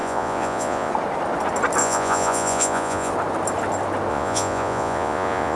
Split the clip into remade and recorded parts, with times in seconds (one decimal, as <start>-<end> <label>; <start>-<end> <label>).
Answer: 0.0-0.9 remade; 0.9-1.8 recorded; 1.8-3.1 remade; 3.1-4.1 recorded; 4.1-5.6 remade